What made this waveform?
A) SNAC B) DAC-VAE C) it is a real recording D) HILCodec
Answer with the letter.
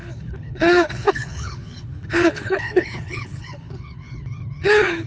D